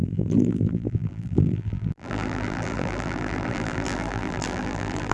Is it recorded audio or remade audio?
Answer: remade